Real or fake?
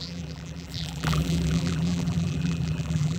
fake